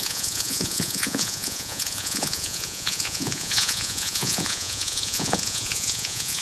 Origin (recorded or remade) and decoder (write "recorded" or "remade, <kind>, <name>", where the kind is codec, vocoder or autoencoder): remade, vocoder, Vocos